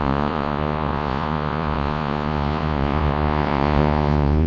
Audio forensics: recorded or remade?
remade